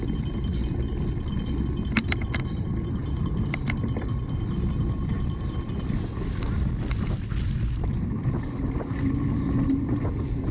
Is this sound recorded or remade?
recorded